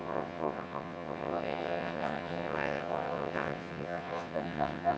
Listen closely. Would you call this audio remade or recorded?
remade